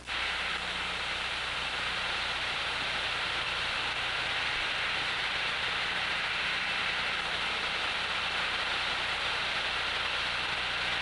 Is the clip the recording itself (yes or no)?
no